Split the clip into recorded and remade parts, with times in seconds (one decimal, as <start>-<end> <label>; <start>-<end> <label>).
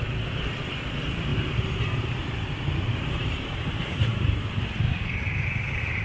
0.0-1.3 recorded; 1.3-4.9 remade; 4.9-6.0 recorded